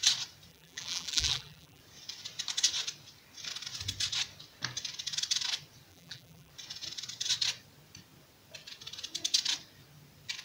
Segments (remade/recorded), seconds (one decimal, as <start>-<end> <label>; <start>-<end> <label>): 0.0-0.5 recorded; 0.5-1.8 remade; 1.8-5.9 recorded; 5.9-6.5 remade; 6.5-10.4 recorded